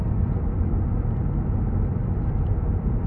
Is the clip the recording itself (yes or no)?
yes